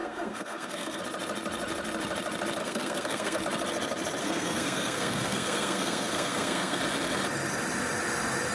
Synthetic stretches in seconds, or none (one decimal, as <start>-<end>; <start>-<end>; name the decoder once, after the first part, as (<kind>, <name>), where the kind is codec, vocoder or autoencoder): 0.0-1.0 (codec, SNAC); 2.6-3.4; 4.2-6.8